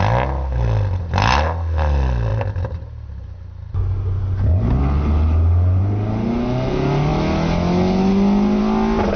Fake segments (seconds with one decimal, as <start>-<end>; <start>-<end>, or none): none